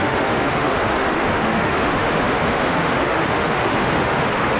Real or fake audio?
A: fake